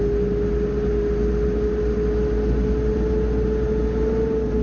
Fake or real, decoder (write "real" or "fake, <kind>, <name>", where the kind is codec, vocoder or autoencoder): real